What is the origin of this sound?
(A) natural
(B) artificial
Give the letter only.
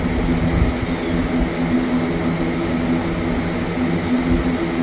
A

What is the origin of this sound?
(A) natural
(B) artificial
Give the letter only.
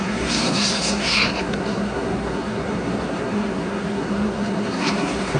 B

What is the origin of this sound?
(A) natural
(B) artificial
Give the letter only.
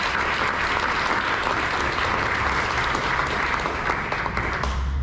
A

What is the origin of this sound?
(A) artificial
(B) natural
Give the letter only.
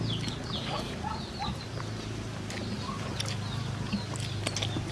B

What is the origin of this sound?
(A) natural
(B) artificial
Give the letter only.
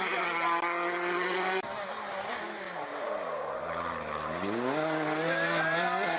A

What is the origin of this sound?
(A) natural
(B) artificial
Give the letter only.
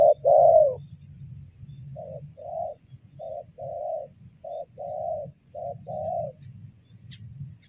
B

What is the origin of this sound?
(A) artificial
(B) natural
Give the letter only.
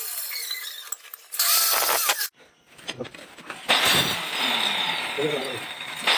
B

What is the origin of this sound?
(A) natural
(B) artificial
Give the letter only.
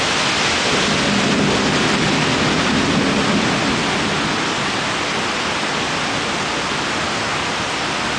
A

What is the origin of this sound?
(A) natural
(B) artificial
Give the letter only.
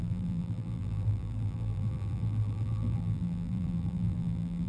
B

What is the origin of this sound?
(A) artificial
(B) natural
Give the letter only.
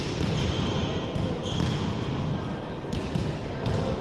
B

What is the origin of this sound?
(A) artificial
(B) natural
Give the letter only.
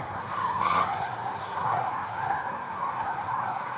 A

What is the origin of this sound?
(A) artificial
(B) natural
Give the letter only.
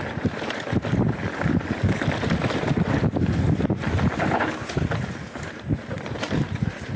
B